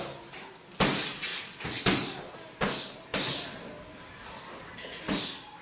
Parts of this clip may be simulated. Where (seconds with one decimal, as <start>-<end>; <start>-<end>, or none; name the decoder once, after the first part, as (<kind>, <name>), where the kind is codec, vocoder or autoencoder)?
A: 1.3-1.8 (vocoder, Vocos)